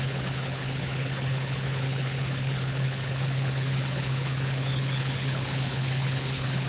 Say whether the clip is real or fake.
fake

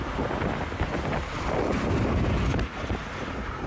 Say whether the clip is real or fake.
real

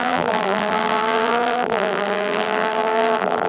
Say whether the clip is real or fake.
fake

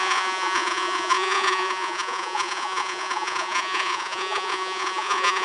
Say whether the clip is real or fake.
fake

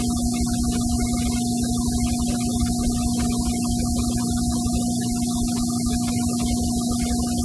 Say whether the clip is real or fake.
real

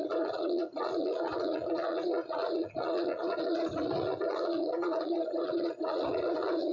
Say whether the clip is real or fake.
fake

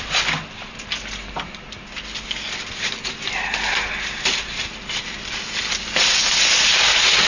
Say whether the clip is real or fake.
real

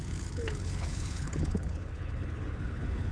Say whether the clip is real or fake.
fake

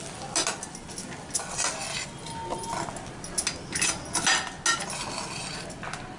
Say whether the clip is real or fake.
real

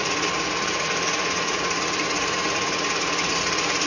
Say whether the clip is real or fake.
fake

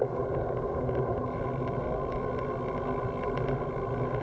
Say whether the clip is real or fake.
real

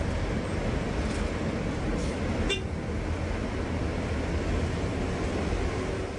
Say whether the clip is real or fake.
real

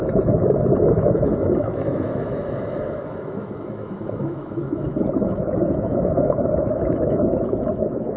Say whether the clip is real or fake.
fake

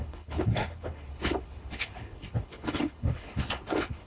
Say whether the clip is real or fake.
fake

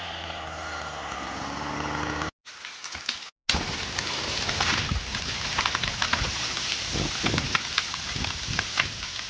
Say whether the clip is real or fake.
real